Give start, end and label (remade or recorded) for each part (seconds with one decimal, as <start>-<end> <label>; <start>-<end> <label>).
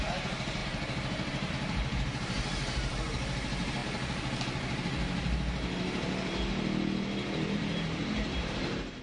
0.0-3.8 remade; 3.8-7.5 recorded; 7.5-9.0 remade